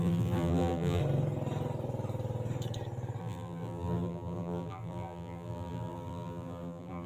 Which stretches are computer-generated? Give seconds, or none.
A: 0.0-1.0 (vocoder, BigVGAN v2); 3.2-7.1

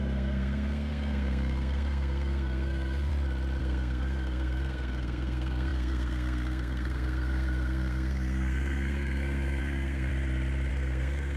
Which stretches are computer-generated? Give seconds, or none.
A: 0.0-3.1 (codec, SNAC); 3.6-10.1; 10.7-11.4

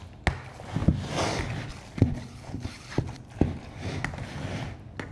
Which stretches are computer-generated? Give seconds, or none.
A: 2.2-2.9 (codec, HILCodec)

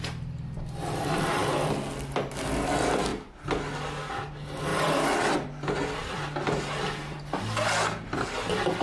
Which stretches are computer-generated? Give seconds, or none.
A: none

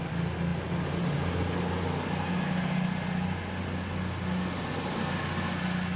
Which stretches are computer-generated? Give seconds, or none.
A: none

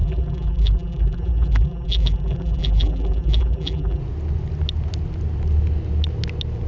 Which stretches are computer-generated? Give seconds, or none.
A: 0.0-4.0 (vocoder, BigVGAN v2)